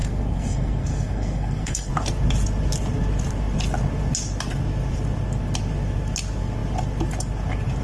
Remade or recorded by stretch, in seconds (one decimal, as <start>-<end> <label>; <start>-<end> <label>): 0.0-1.9 remade; 1.9-7.8 recorded